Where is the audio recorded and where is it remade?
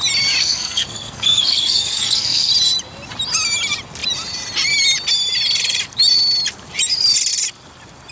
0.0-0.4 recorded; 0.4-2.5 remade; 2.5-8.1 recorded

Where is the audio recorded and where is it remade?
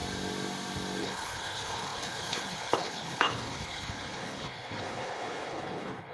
0.0-1.0 recorded; 1.0-6.1 remade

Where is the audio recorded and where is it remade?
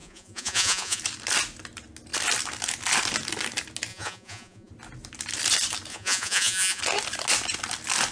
0.0-1.0 remade; 1.0-3.9 recorded; 3.9-4.7 remade; 4.7-5.9 recorded; 5.9-6.8 remade; 6.8-8.1 recorded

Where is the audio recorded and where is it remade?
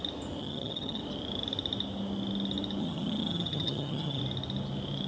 0.0-0.4 recorded; 0.4-1.0 remade; 1.0-2.8 recorded; 2.8-4.2 remade; 4.2-5.1 recorded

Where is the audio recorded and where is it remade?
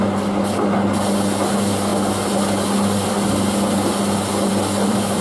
0.0-5.2 recorded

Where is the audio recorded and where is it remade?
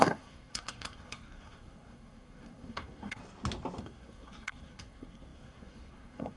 0.0-3.2 remade; 3.2-3.8 recorded; 3.8-6.4 remade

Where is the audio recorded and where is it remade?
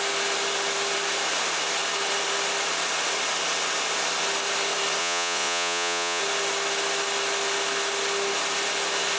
0.0-5.0 recorded; 5.0-6.2 remade; 6.2-9.2 recorded